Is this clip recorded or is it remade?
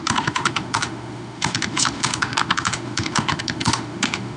remade